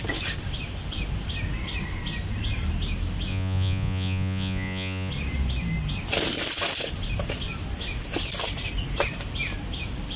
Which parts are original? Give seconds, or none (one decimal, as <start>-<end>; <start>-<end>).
0.0-3.3; 5.1-10.2